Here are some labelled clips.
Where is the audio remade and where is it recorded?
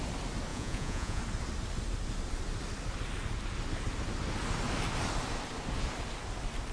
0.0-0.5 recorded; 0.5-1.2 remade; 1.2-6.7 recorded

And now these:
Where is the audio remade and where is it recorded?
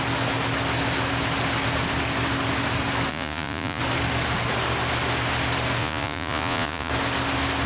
0.0-3.1 recorded; 3.1-3.8 remade; 3.8-5.8 recorded; 5.8-6.9 remade; 6.9-7.7 recorded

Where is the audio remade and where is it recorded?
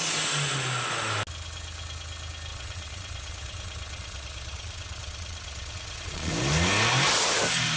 0.0-2.5 recorded; 2.5-6.3 remade; 6.3-7.8 recorded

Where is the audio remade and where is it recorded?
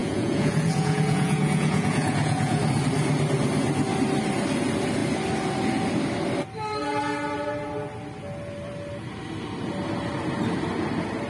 0.0-2.6 remade; 2.6-11.3 recorded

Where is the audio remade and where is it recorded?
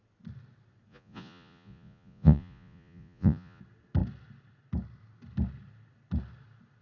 0.0-0.9 recorded; 0.9-3.6 remade; 3.6-6.8 recorded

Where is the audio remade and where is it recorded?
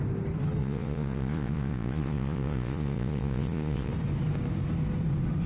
0.0-0.6 recorded; 0.6-3.9 remade; 3.9-5.5 recorded